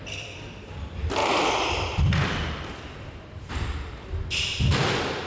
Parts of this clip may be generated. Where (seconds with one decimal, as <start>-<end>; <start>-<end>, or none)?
0.0-5.3